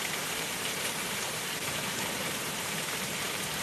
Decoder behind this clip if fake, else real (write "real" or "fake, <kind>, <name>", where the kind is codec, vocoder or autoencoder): fake, vocoder, BigVGAN v2